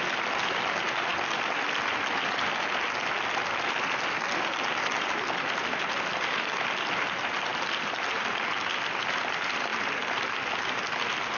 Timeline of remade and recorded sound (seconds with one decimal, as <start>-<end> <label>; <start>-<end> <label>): 0.0-11.4 recorded

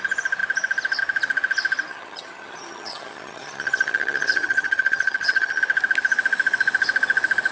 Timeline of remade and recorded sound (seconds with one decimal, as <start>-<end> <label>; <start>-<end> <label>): 0.0-1.9 recorded; 1.9-5.6 remade; 5.6-7.5 recorded

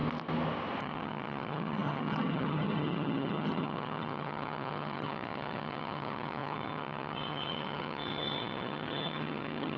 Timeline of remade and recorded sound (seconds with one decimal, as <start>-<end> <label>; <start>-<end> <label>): 0.0-0.8 recorded; 0.8-9.8 remade

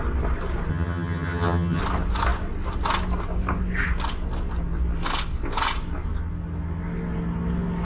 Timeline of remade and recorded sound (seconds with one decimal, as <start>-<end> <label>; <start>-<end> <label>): 0.0-0.7 recorded; 0.7-1.8 remade; 1.8-7.8 recorded

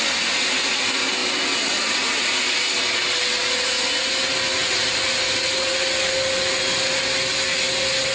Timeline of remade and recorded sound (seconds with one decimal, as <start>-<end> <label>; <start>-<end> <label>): 0.0-8.1 recorded

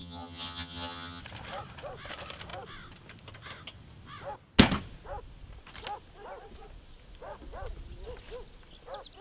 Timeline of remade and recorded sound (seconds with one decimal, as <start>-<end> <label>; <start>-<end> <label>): 0.0-1.2 remade; 1.2-9.2 recorded

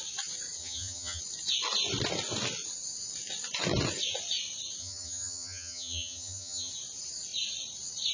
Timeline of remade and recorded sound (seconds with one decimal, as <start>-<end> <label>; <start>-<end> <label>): 0.0-0.6 recorded; 0.6-1.2 remade; 1.2-4.8 recorded; 4.8-6.7 remade; 6.7-8.1 recorded

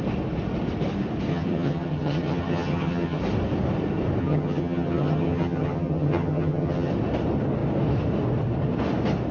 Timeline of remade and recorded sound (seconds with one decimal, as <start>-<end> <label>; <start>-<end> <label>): 0.0-1.3 recorded; 1.3-3.2 remade; 3.2-4.2 recorded; 4.2-6.9 remade; 6.9-9.3 recorded